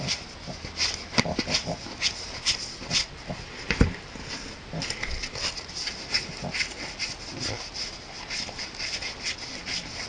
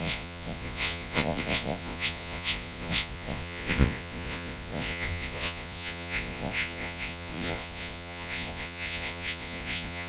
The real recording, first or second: first